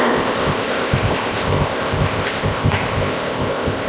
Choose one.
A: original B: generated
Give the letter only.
B